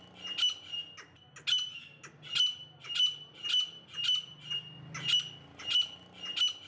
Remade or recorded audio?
recorded